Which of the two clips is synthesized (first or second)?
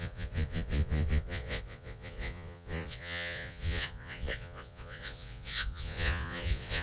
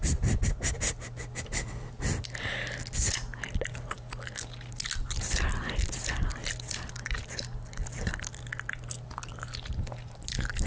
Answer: first